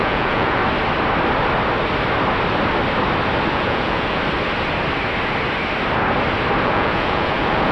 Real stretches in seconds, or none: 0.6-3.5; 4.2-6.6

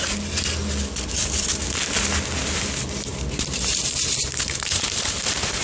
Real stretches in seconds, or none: 0.0-3.1; 3.8-4.2

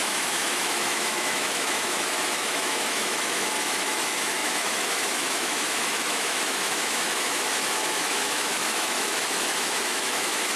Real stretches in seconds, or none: none